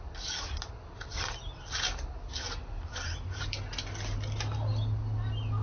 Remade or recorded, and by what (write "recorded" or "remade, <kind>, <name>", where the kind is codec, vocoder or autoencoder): recorded